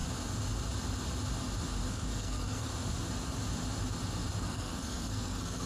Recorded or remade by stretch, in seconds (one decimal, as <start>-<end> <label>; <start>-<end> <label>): 0.0-1.9 recorded; 1.9-2.7 remade; 2.7-4.4 recorded; 4.4-5.7 remade